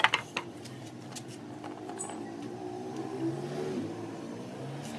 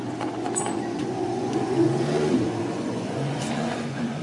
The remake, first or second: second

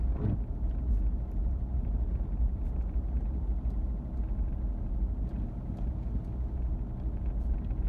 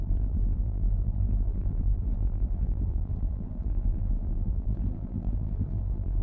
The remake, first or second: second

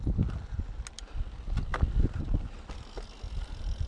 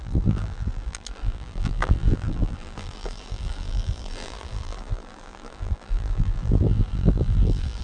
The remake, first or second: second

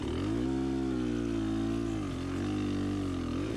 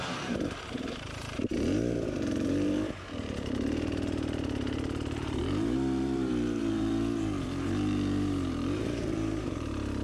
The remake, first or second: second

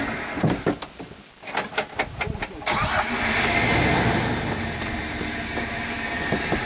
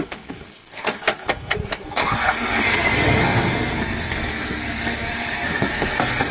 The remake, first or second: second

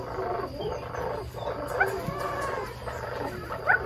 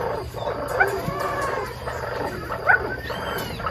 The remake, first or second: second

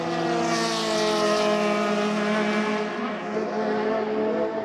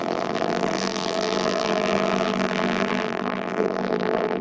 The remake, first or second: second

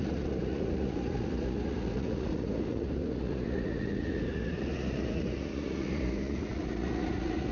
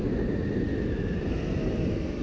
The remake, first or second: first